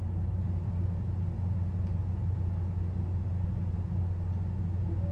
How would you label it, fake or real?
real